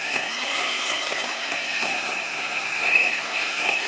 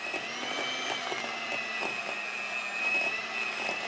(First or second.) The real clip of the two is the second